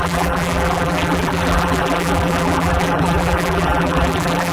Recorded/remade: remade